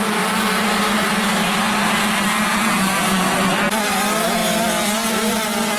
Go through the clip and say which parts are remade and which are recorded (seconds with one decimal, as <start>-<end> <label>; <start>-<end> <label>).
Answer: 0.0-5.8 recorded